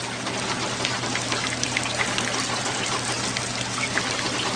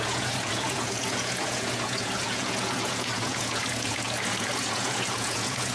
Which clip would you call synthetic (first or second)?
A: second